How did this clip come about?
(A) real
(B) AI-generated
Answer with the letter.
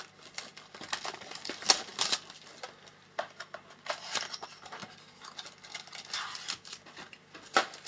A